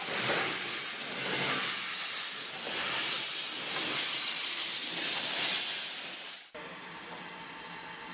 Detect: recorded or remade recorded